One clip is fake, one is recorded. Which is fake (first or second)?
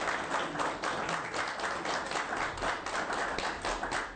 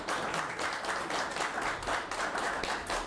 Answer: second